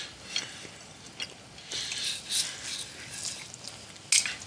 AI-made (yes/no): no